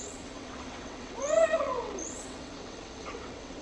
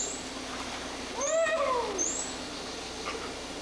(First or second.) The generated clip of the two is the first